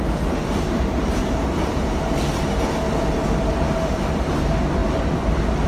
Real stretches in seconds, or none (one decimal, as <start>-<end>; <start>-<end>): 0.0-5.7